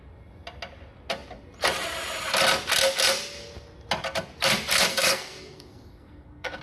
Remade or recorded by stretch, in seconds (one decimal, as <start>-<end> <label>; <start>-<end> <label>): 0.0-4.9 recorded; 4.9-6.6 remade